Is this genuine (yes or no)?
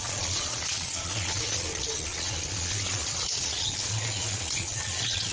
no